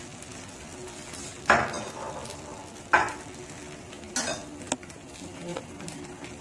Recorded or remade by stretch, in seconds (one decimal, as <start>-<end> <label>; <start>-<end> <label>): 0.0-5.5 recorded; 5.5-6.4 remade